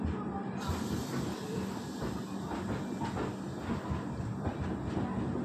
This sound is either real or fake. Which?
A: real